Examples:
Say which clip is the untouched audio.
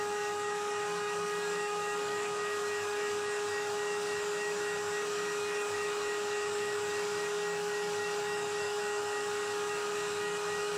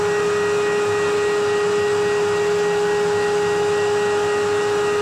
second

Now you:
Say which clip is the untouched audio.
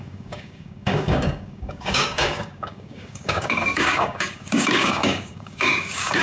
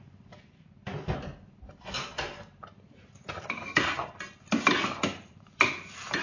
second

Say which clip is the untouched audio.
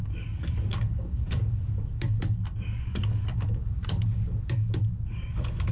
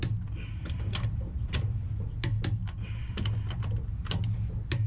second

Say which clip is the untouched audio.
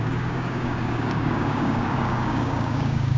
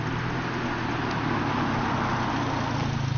second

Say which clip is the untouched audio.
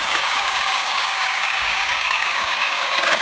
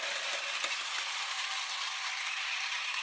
second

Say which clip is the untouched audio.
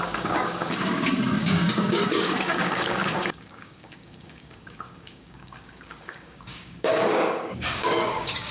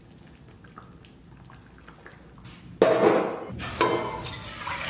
second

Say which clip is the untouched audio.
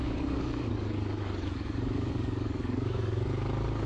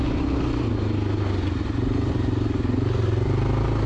second